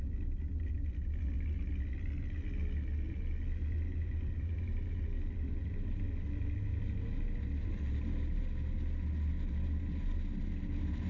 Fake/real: real